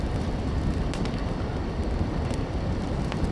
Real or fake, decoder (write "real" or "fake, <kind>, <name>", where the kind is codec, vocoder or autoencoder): real